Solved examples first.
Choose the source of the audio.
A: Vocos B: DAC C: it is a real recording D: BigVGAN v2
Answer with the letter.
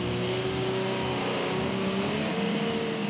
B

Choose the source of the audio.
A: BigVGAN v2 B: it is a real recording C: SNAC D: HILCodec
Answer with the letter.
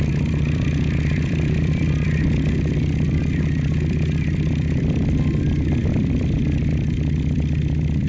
A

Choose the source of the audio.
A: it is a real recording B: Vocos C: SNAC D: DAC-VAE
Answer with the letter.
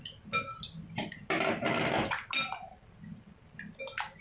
A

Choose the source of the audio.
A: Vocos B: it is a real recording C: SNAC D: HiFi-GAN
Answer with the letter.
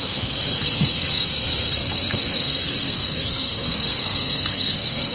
C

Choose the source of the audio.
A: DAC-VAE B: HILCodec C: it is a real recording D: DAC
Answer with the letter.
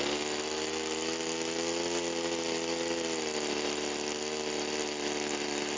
C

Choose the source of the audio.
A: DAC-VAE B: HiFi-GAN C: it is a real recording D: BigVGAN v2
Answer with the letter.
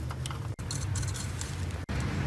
C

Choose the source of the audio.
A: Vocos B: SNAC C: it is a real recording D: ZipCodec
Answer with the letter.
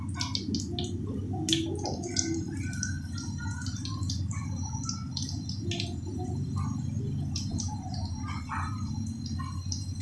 C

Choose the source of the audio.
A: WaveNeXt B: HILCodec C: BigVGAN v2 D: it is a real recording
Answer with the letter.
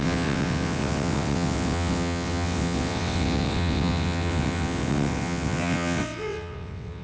A